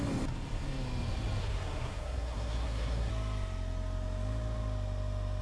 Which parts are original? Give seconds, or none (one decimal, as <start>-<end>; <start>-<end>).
0.0-1.4; 3.1-5.4